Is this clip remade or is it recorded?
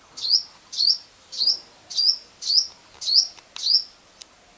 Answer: recorded